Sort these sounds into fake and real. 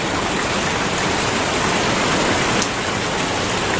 real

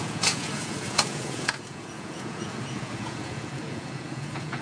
fake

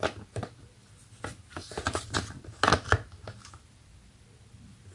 real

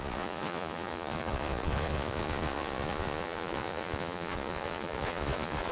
fake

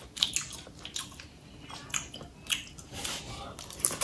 real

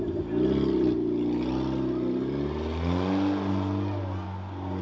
real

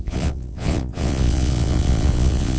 fake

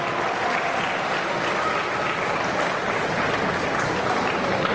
real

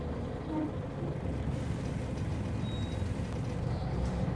real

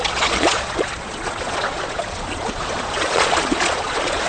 fake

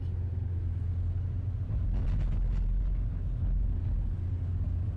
real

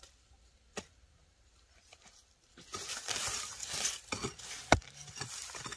real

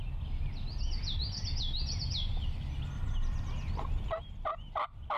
real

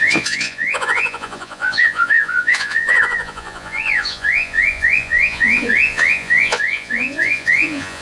fake